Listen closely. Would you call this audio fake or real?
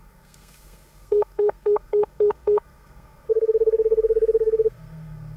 fake